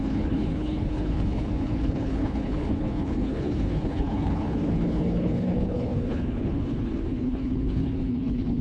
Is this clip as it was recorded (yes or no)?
no